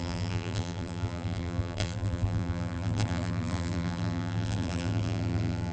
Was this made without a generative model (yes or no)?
no